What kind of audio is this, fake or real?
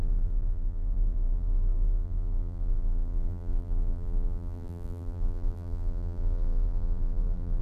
fake